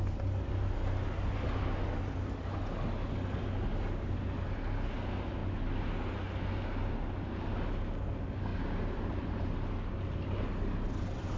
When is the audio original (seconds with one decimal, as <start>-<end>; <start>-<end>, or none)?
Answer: 0.0-11.4